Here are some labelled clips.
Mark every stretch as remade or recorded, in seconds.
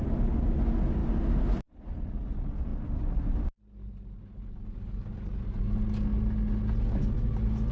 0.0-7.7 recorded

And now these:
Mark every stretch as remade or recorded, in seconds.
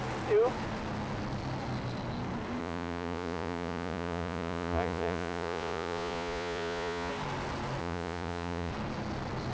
0.0-2.6 recorded; 2.6-7.1 remade; 7.1-7.8 recorded; 7.8-8.7 remade; 8.7-9.5 recorded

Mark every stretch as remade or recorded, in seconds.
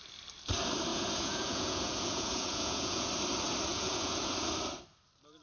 0.0-0.9 recorded; 0.9-3.1 remade; 3.1-3.7 recorded; 3.7-4.3 remade; 4.3-5.4 recorded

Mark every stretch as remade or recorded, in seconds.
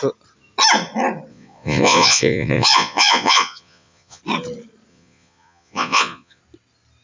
0.0-1.3 recorded; 1.3-4.2 remade; 4.2-4.9 recorded; 4.9-6.4 remade; 6.4-7.0 recorded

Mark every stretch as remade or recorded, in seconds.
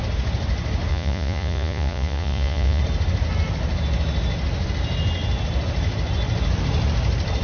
0.0-0.9 recorded; 0.9-2.8 remade; 2.8-7.4 recorded